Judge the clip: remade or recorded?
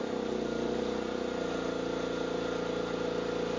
recorded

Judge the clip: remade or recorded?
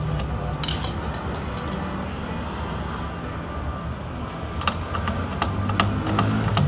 recorded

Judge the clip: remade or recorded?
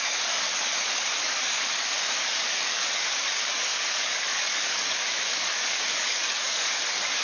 remade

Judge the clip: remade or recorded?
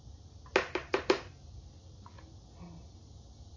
recorded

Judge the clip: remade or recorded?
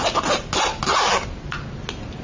recorded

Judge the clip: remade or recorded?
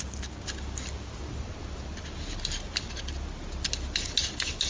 recorded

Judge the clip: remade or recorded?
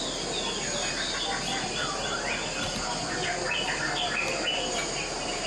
recorded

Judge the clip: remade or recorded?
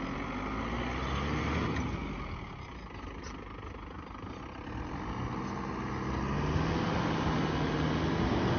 recorded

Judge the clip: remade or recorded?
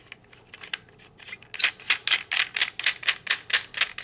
recorded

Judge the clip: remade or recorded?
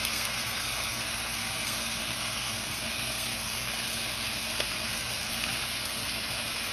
remade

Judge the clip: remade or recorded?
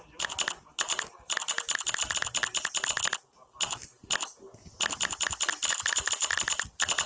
recorded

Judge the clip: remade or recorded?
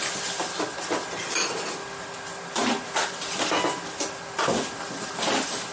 recorded